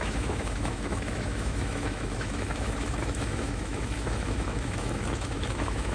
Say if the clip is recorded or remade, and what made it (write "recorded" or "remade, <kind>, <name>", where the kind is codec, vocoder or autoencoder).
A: remade, autoencoder, DAC-VAE